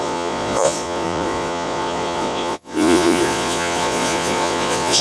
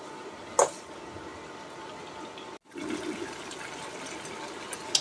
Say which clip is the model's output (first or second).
first